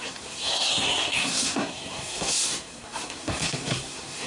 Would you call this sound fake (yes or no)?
yes